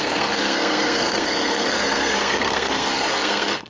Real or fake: fake